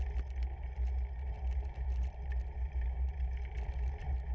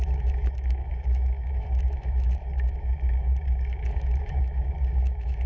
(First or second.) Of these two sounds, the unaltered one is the first